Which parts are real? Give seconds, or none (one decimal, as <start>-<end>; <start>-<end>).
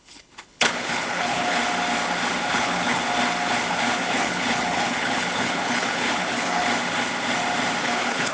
1.6-2.5; 3.0-3.7; 6.6-7.8